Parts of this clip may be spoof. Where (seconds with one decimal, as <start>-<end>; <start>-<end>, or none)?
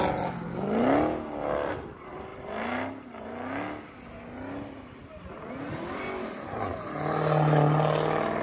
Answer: none